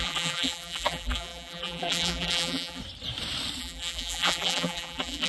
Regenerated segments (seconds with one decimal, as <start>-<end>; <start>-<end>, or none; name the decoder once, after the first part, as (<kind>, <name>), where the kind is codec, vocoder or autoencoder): 0.0-2.8 (vocoder, BigVGAN v2); 3.6-5.3